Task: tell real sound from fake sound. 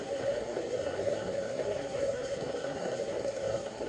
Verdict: fake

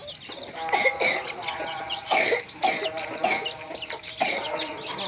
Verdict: real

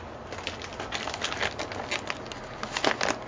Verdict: real